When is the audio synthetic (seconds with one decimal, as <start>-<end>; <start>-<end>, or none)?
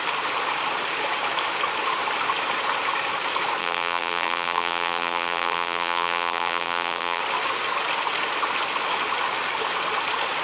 3.6-7.2